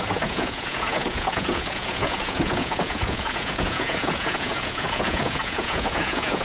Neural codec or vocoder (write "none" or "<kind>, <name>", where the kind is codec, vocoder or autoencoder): vocoder, Vocos